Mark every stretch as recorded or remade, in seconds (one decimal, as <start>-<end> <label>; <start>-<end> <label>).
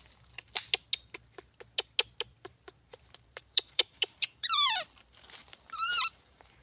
0.0-2.3 recorded; 2.3-6.6 remade